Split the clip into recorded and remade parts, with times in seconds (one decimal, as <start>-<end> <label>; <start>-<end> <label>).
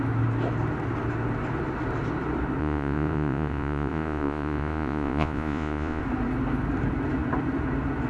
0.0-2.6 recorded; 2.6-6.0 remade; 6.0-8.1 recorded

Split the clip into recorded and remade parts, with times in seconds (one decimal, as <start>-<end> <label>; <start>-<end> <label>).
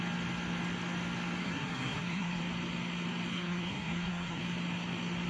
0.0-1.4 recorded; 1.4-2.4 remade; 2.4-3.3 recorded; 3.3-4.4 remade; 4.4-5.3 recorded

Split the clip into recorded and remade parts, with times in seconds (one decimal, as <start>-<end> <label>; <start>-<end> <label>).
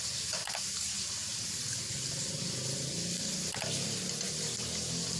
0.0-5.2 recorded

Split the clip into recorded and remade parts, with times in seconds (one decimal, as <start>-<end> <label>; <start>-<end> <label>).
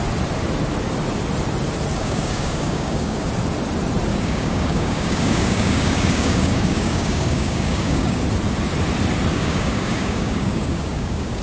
0.0-2.0 recorded; 2.0-3.3 remade; 3.3-4.1 recorded; 4.1-8.2 remade; 8.2-9.3 recorded; 9.3-11.4 remade